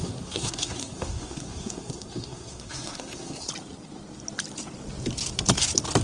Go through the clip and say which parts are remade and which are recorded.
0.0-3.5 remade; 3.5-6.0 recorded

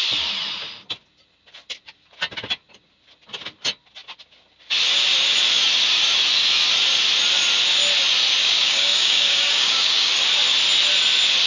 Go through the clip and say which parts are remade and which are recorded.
0.0-8.4 recorded; 8.4-10.1 remade; 10.1-11.5 recorded

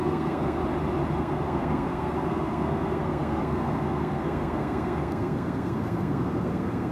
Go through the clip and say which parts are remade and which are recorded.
0.0-0.6 remade; 0.6-1.2 recorded; 1.2-6.9 remade

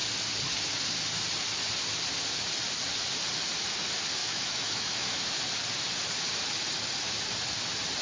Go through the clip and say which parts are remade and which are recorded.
0.0-4.2 recorded; 4.2-5.3 remade; 5.3-8.0 recorded